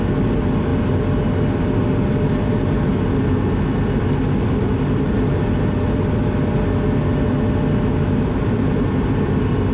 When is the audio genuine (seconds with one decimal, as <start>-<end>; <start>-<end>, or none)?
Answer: 0.0-9.7